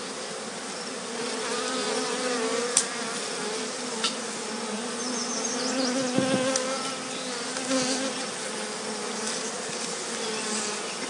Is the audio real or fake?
real